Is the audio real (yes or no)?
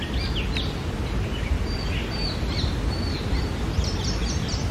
yes